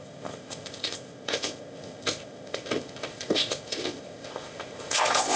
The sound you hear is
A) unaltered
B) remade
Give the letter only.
B